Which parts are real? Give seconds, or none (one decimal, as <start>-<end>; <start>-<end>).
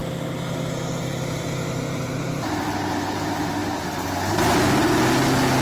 0.0-1.1; 3.6-5.6